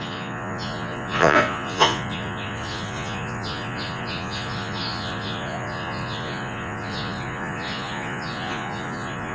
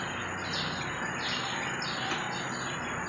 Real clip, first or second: second